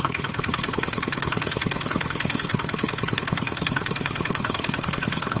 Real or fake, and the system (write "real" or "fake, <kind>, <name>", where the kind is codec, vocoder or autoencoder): fake, codec, HILCodec